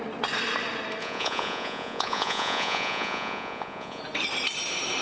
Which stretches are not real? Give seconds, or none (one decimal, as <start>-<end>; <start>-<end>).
1.0-4.0